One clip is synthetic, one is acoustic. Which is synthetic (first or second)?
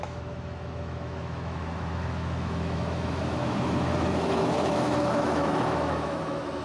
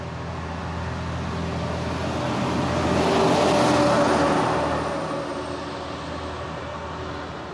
first